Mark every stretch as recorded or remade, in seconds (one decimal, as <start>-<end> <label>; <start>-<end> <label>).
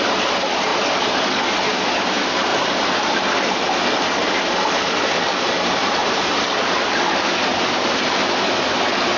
0.0-9.2 recorded